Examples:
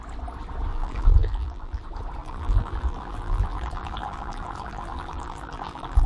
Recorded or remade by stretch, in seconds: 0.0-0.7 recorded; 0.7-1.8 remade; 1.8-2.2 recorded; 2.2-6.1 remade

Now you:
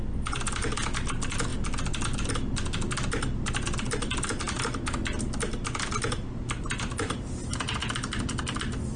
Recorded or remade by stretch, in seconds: 0.0-9.0 recorded

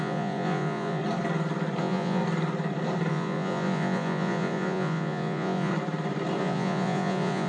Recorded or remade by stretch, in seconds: 0.0-1.0 remade; 1.0-1.8 recorded; 1.8-2.2 remade; 2.2-3.1 recorded; 3.1-5.7 remade; 5.7-6.4 recorded; 6.4-7.5 remade

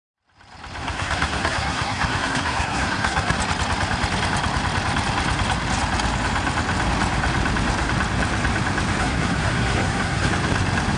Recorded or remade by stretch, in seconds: 0.0-0.8 recorded; 0.8-3.4 remade; 3.4-9.0 recorded; 9.0-10.3 remade; 10.3-11.0 recorded

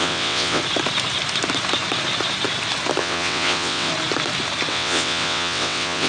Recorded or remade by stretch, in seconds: 0.0-0.6 remade; 0.6-3.0 recorded; 3.0-3.9 remade; 3.9-4.7 recorded; 4.7-6.1 remade

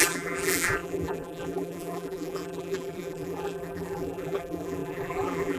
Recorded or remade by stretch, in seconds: 0.0-5.6 remade

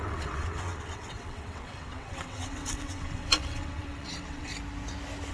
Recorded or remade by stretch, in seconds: 0.0-4.5 remade; 4.5-5.3 recorded

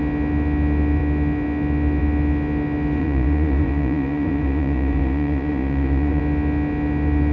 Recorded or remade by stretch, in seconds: 0.0-3.0 recorded; 3.0-6.2 remade; 6.2-7.3 recorded